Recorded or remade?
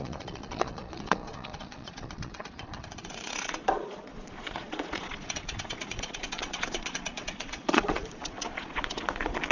remade